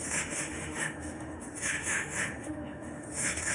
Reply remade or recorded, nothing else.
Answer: remade